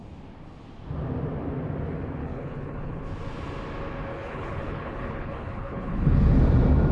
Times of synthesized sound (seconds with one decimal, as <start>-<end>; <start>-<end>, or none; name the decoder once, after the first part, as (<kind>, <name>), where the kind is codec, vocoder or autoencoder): 2.2-3.0 (codec, HILCodec); 4.1-6.4